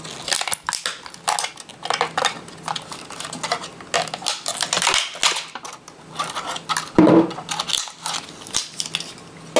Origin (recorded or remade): recorded